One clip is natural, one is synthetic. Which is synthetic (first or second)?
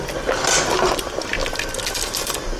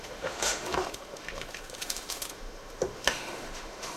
second